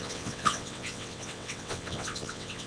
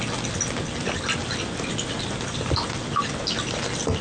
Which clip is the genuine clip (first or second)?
second